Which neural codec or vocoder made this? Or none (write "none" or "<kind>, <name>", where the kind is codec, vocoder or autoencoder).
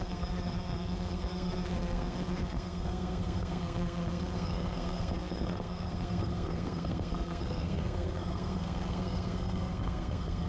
codec, SNAC